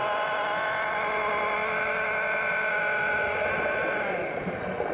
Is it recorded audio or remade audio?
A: recorded